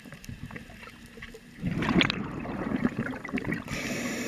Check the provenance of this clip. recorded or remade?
remade